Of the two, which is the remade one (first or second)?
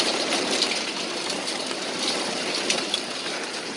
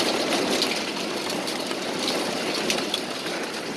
first